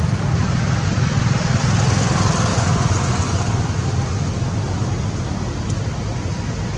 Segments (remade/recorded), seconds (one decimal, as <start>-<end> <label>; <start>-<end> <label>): 0.0-2.5 recorded; 2.5-3.4 remade; 3.4-6.8 recorded